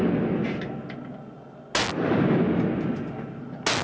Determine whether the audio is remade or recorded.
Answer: recorded